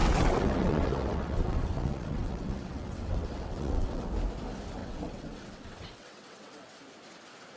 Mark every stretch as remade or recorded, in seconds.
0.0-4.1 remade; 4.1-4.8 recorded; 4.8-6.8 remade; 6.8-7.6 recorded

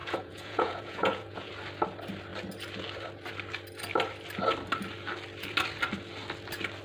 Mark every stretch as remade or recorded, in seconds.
0.0-1.5 remade; 1.5-6.8 recorded

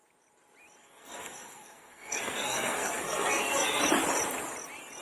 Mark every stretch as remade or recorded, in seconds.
0.0-0.8 recorded; 0.8-3.8 remade; 3.8-5.0 recorded

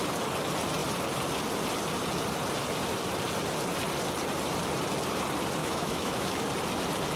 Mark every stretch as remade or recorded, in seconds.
0.0-5.6 recorded; 5.6-6.5 remade; 6.5-7.2 recorded

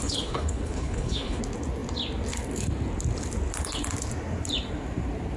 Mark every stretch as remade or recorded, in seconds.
0.0-1.4 remade; 1.4-5.4 recorded

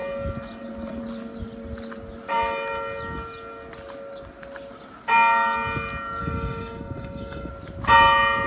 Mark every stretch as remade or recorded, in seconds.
0.0-6.2 recorded; 6.2-7.5 remade; 7.5-8.5 recorded